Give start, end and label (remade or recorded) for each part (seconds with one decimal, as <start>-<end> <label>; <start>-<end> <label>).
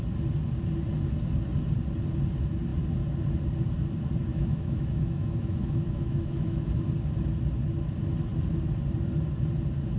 0.0-4.3 recorded; 4.3-6.7 remade; 6.7-10.0 recorded